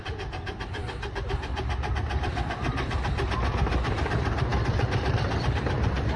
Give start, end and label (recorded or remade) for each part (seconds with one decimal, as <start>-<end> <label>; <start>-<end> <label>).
0.0-6.2 remade